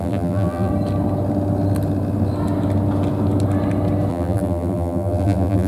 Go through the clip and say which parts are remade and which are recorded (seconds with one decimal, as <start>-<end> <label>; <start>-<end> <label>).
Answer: 0.0-0.7 remade; 0.7-4.1 recorded; 4.1-5.7 remade